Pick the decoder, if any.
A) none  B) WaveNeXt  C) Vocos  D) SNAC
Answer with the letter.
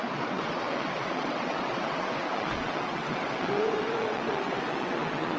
B